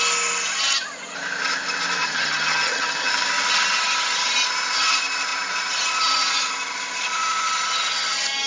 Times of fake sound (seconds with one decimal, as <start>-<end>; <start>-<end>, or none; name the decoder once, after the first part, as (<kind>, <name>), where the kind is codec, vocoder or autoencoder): 2.0-3.1 (vocoder, HiFi-GAN)

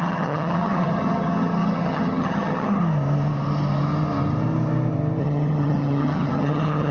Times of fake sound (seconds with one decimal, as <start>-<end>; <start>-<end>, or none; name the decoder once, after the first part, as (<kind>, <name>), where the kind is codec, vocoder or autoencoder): 0.0-2.8 (vocoder, HiFi-GAN); 5.2-6.9

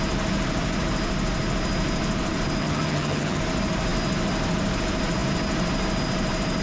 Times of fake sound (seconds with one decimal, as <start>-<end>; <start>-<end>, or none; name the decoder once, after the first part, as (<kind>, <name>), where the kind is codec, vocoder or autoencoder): 2.6-3.4 (vocoder, HiFi-GAN)

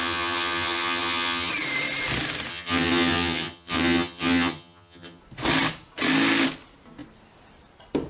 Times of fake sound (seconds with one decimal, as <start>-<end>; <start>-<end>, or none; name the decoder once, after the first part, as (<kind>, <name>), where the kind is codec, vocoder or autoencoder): 0.0-1.5 (vocoder, HiFi-GAN); 2.5-5.2

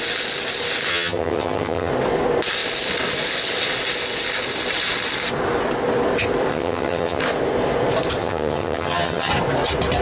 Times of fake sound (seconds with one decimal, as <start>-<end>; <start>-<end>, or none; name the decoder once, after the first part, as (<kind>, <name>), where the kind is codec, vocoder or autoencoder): 0.9-1.9 (vocoder, HiFi-GAN); 6.5-7.2; 8.2-9.3

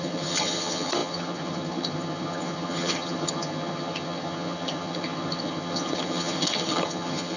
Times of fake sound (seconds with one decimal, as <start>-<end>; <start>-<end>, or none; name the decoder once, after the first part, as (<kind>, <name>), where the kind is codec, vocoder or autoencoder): 0.0-7.4 (vocoder, HiFi-GAN)

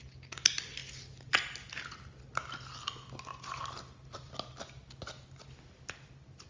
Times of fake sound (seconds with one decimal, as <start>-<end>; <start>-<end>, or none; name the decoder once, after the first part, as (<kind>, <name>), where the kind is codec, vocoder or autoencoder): none